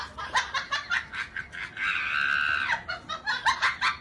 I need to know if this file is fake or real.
real